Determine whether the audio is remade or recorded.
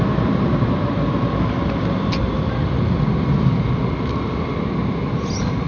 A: recorded